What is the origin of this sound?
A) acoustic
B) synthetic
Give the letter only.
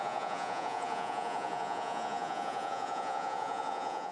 B